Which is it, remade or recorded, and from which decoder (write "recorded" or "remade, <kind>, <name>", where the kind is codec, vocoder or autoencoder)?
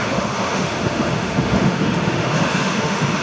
remade, autoencoder, DAC-VAE